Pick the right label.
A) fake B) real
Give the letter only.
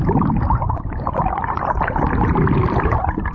A